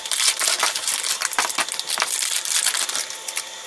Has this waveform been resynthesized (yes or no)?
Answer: no